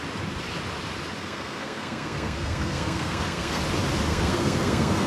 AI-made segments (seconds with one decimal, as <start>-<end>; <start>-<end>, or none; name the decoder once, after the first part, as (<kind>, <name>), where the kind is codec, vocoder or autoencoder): 1.2-3.6 (codec, SNAC); 4.1-5.1